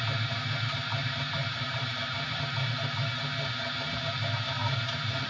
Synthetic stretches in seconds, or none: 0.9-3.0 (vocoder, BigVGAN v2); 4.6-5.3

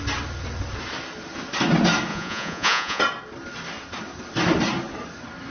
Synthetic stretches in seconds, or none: 2.1-3.0 (vocoder, Vocos)

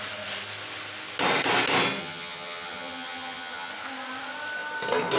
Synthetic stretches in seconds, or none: 2.0-3.7 (vocoder, HiFi-GAN)

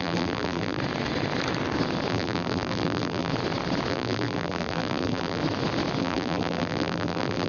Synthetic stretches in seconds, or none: 0.0-0.8 (vocoder, BigVGAN v2); 2.1-3.3; 3.9-5.4; 6.0-7.5

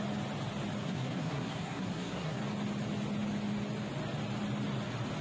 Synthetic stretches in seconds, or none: 0.8-2.4 (codec, SNAC)

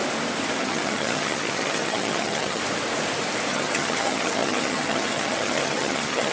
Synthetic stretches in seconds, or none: 0.6-2.6 (vocoder, HiFi-GAN); 3.5-6.3